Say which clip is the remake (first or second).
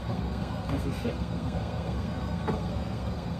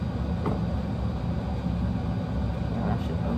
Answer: first